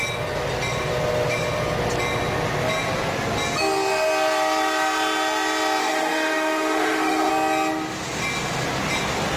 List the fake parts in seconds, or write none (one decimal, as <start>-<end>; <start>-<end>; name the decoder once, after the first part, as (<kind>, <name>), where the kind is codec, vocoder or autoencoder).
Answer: 5.8-7.3 (autoencoder, DAC-VAE)